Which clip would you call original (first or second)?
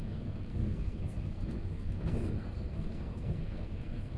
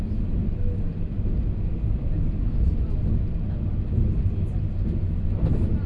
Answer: second